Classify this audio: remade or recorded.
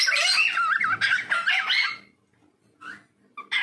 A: recorded